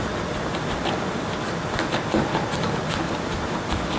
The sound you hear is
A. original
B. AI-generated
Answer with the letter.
A